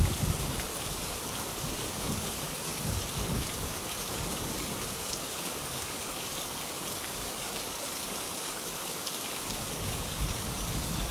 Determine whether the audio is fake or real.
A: fake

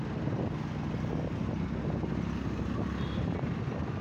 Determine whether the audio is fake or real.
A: real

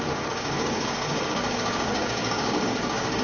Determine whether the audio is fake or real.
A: fake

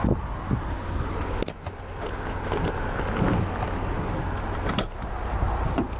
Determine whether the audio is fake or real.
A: real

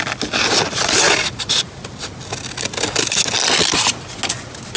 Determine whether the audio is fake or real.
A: real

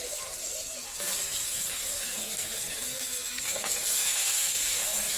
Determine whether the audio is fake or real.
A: fake